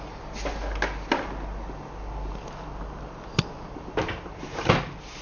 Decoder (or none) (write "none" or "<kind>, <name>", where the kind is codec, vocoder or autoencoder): none